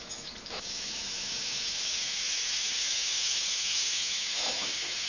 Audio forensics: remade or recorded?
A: remade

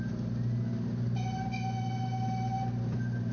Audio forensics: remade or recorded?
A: recorded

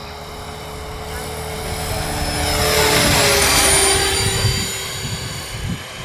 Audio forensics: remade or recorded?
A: recorded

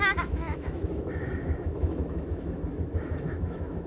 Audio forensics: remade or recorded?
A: remade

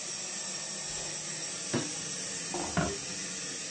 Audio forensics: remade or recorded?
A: recorded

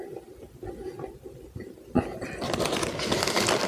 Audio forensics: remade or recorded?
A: recorded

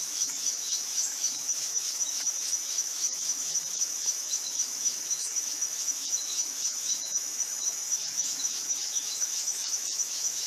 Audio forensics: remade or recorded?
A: remade